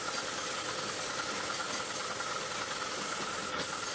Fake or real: real